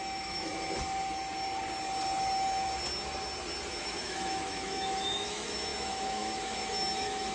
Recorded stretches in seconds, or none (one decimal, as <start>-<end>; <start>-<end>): 0.5-3.8